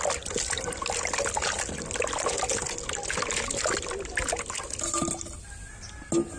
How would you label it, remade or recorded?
recorded